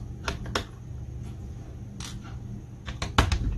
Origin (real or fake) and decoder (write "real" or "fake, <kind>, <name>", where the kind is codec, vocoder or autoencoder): real